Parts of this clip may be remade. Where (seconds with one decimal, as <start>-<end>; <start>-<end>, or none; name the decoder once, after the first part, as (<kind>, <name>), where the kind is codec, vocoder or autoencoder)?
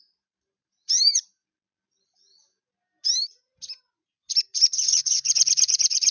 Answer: 0.0-1.4 (vocoder, BigVGAN v2); 4.3-6.1